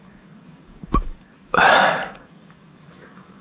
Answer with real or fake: fake